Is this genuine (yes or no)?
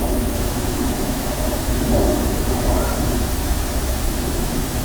no